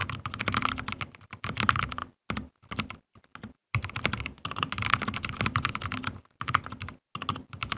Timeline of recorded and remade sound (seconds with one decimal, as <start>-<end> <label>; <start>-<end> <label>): 0.0-7.8 recorded